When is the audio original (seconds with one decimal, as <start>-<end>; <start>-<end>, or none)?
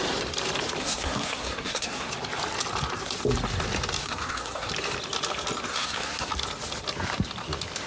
0.0-0.8; 2.1-4.0; 4.7-5.7; 6.3-7.9